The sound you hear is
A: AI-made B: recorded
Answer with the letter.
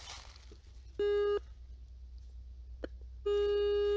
B